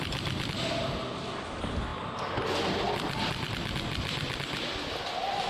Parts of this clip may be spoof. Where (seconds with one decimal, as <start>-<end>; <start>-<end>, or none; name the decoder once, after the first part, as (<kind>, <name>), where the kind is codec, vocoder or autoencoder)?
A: none

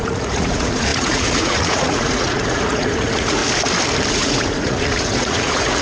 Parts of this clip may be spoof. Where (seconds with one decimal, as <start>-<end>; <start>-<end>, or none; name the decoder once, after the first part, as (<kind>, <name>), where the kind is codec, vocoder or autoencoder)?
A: 0.0-3.4 (vocoder, Vocos); 4.1-5.8

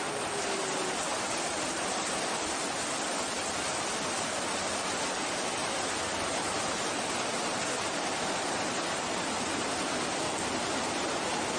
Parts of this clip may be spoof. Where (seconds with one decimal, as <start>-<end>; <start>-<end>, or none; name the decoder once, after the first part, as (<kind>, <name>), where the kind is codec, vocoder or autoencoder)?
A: none

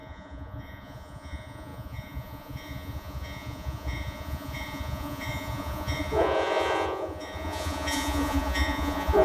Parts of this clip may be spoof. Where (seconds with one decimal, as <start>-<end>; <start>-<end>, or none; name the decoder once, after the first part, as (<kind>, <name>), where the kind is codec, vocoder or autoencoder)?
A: 0.0-9.2 (vocoder, Vocos)